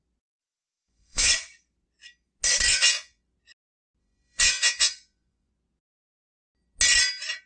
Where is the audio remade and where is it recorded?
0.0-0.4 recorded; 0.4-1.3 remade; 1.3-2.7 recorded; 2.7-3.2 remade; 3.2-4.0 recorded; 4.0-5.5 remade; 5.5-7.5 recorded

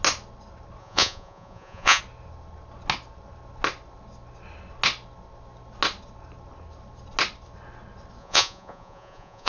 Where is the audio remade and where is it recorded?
0.0-0.8 recorded; 0.8-2.0 remade; 2.0-8.2 recorded; 8.2-9.5 remade

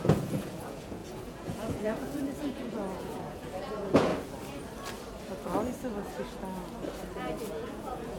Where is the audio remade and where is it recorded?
0.0-4.1 remade; 4.1-7.5 recorded; 7.5-8.2 remade

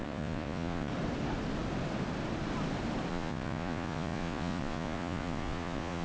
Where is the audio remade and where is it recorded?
0.0-0.9 remade; 0.9-3.1 recorded; 3.1-6.0 remade

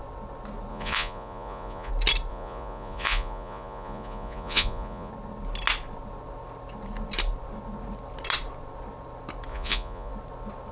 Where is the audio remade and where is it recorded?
0.0-0.7 recorded; 0.7-1.9 remade; 1.9-2.3 recorded; 2.3-5.1 remade; 5.1-9.5 recorded; 9.5-10.1 remade; 10.1-10.7 recorded

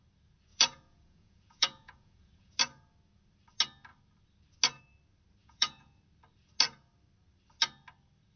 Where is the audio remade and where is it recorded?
0.0-0.5 recorded; 0.5-2.6 remade; 2.6-5.4 recorded; 5.4-6.0 remade; 6.0-8.4 recorded